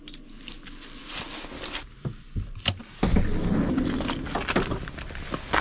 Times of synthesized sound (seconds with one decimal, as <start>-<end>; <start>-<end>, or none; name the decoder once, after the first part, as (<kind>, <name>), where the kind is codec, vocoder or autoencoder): none